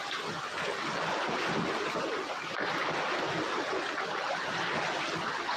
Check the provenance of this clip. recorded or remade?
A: recorded